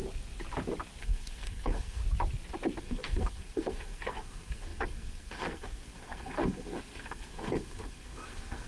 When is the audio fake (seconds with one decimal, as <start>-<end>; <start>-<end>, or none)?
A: 1.0-2.0; 2.8-8.7